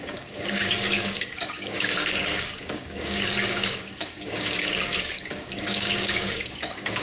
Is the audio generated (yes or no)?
yes